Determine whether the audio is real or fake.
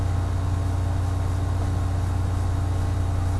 real